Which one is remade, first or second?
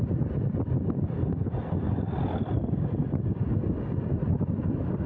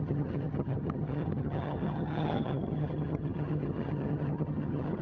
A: second